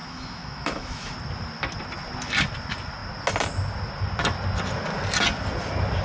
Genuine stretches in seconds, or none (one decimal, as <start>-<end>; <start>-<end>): 1.1-6.0

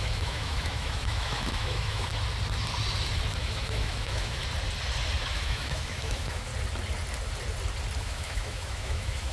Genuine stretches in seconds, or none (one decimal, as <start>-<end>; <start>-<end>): 2.1-3.4; 4.4-5.3; 6.5-8.0

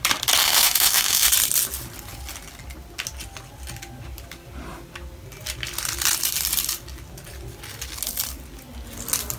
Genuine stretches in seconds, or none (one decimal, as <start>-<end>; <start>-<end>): 0.0-0.4; 1.3-9.4

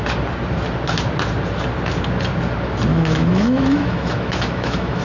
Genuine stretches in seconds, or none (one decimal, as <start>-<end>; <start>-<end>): 0.0-2.9

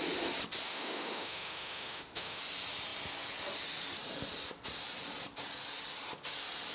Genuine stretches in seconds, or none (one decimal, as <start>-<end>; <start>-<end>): 0.0-0.7; 2.4-6.7

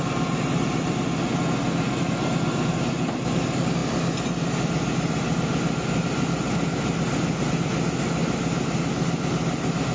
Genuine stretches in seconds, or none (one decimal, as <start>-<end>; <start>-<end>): 0.0-9.9